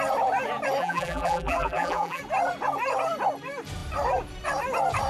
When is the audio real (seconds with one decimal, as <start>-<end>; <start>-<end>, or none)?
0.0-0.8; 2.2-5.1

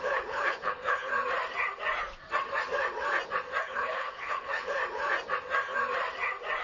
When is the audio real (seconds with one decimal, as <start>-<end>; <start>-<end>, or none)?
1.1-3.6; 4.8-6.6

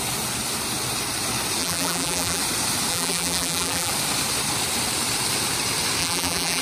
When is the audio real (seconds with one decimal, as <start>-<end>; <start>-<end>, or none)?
0.0-1.6; 2.4-2.9; 3.9-6.0

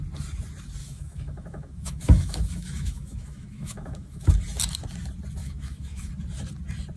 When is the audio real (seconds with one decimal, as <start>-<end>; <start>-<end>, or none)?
0.0-0.8; 4.3-5.4; 6.1-7.0

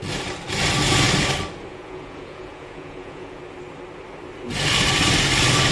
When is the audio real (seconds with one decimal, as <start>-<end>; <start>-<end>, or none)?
0.0-1.7; 3.4-5.7

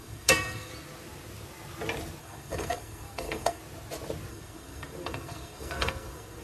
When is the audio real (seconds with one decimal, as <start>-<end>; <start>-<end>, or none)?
0.7-2.2; 3.6-4.3